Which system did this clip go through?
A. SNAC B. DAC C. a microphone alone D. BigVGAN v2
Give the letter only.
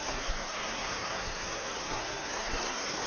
A